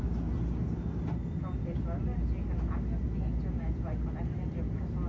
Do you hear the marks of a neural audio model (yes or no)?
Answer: no